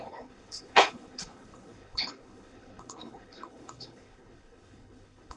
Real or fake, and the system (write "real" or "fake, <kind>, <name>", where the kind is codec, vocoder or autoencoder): fake, codec, HILCodec